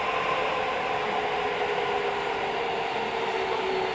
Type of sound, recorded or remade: recorded